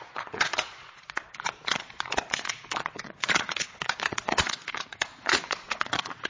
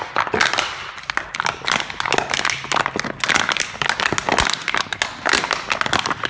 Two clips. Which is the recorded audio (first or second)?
second